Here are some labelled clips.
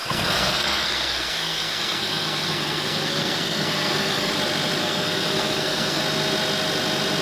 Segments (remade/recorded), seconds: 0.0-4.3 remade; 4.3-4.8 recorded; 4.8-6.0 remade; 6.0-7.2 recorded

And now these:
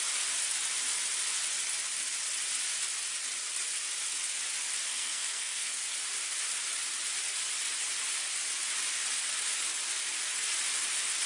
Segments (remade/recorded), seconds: 0.0-4.9 recorded; 4.9-5.8 remade; 5.8-11.3 recorded